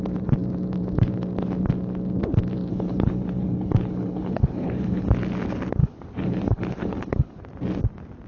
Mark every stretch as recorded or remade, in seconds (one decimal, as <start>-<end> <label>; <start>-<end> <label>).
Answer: 0.0-2.7 recorded; 2.7-5.1 remade; 5.1-5.8 recorded; 5.8-7.4 remade; 7.4-8.3 recorded